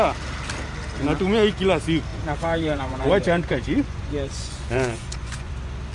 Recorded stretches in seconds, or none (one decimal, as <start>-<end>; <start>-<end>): 0.0-2.1; 5.5-5.9